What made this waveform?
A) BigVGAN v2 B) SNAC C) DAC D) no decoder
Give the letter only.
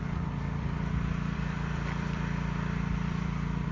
A